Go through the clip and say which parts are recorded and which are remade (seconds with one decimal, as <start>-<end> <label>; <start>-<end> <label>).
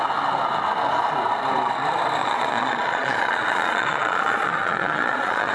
0.0-2.2 recorded; 2.2-5.5 remade